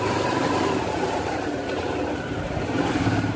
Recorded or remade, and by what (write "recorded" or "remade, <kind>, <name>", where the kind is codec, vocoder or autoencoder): remade, vocoder, BigVGAN v2